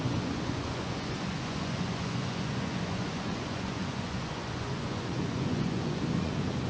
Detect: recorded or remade remade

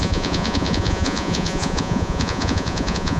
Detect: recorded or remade remade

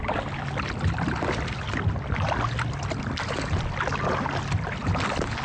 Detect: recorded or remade recorded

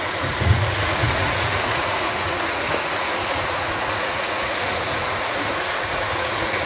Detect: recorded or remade remade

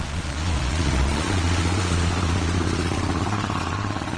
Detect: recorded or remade remade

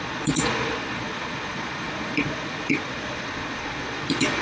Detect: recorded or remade remade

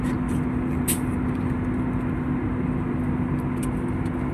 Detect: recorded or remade recorded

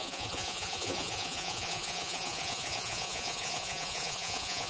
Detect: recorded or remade remade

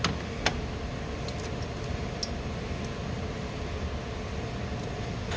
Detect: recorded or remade recorded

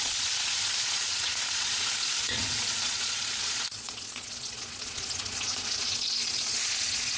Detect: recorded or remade remade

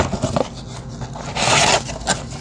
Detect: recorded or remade recorded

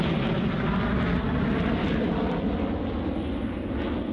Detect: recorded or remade recorded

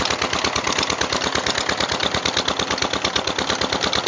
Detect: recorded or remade recorded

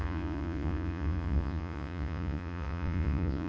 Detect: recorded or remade remade